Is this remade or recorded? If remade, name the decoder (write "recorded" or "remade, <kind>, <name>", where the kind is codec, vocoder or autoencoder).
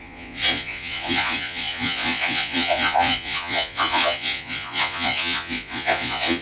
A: remade, vocoder, Vocos